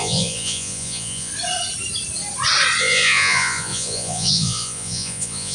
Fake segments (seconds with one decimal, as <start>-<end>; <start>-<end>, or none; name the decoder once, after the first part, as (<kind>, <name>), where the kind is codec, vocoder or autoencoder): 0.0-1.3 (vocoder, Vocos); 2.8-5.5